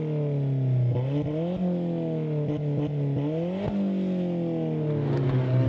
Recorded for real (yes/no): yes